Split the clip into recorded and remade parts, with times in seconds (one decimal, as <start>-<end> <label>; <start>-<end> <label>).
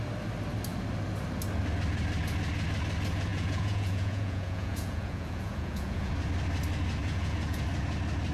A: 0.0-3.3 recorded; 3.3-6.1 remade; 6.1-7.0 recorded; 7.0-7.6 remade; 7.6-8.3 recorded